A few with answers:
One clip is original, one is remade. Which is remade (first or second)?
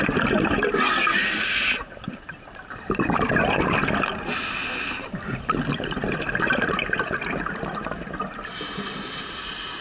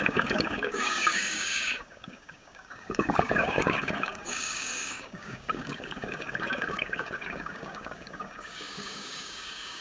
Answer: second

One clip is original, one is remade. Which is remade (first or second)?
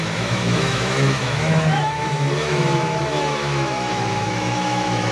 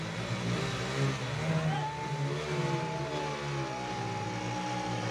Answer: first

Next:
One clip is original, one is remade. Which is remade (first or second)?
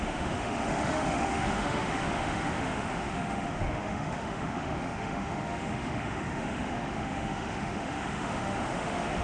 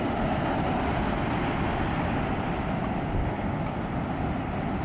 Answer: first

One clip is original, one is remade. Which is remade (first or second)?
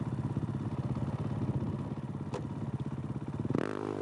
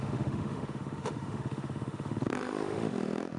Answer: second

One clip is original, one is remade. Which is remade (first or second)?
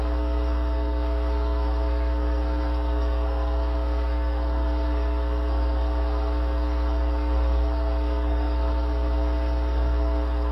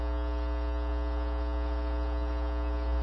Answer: first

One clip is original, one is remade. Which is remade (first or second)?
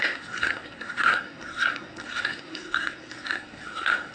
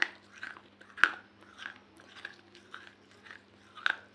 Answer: first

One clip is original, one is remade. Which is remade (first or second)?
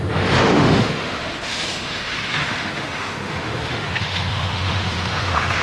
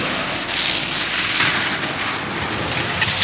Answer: first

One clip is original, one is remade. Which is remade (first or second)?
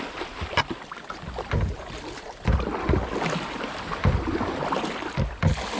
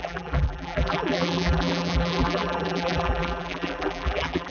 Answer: second